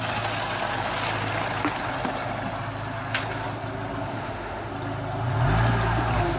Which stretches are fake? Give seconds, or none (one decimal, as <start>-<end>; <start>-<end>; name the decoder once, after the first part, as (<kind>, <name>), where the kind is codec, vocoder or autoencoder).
4.1-4.7 (autoencoder, DAC-VAE)